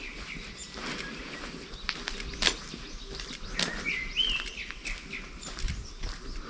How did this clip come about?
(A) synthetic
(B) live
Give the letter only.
B